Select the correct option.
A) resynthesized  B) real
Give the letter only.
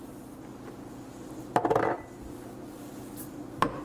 B